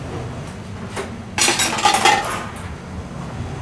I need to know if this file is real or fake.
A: real